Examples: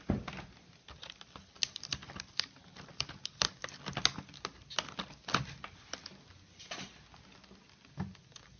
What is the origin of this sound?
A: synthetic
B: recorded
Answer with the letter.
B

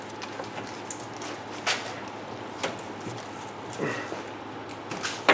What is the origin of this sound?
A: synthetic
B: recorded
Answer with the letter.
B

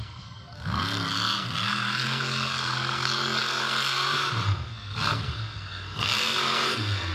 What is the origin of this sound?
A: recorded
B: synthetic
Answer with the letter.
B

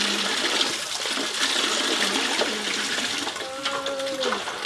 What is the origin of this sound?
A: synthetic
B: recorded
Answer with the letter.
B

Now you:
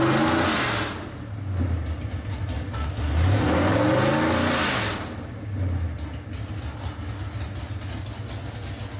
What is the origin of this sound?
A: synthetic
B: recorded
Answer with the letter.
B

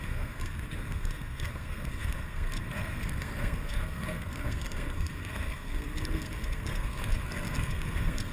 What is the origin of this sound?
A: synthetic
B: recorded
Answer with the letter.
A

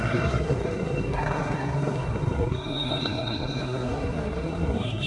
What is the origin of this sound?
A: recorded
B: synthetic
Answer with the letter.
B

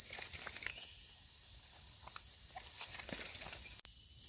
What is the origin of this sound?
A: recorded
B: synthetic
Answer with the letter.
A